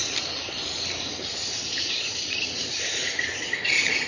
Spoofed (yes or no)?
no